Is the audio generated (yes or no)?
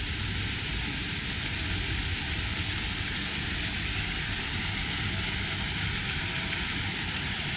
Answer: no